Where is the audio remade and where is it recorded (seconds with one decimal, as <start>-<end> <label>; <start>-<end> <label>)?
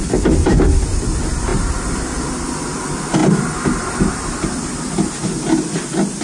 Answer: 0.0-6.2 recorded